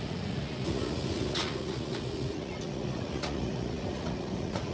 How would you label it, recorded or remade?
remade